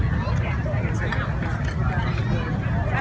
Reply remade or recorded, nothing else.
recorded